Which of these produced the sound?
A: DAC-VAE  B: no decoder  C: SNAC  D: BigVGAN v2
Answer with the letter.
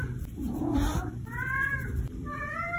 D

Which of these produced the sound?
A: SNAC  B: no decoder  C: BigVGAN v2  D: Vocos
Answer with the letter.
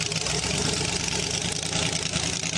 B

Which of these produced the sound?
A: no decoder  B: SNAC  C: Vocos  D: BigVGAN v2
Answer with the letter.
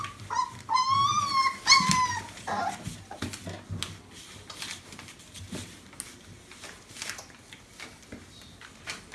A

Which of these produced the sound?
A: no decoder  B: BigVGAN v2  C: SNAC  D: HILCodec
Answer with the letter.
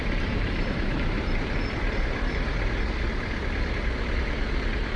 B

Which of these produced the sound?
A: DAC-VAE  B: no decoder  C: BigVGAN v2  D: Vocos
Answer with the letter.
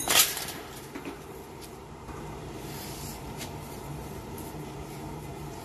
C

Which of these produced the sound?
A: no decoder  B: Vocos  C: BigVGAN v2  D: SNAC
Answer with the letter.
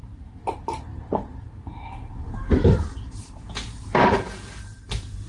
C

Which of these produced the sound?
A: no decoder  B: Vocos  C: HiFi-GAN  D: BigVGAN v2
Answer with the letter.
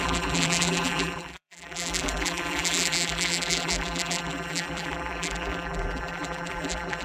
D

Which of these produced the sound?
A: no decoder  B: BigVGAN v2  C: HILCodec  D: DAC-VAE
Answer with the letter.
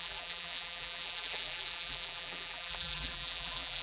B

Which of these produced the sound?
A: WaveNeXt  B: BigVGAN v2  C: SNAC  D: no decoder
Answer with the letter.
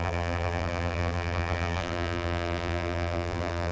B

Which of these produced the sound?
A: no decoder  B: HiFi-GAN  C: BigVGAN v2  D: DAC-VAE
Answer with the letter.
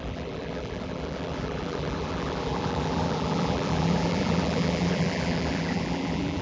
C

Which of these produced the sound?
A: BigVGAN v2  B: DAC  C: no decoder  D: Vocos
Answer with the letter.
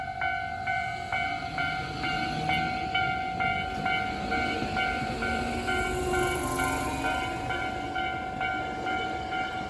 C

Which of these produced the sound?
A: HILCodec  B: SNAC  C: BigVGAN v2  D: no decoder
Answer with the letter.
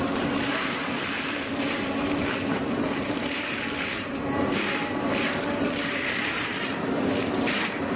C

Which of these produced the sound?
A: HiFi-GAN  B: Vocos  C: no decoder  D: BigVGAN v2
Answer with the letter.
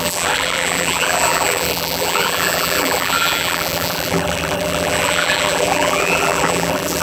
D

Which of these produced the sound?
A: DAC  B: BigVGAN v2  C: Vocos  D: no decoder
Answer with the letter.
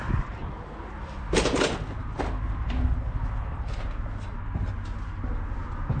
D